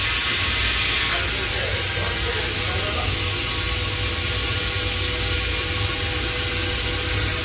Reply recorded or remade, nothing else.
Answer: recorded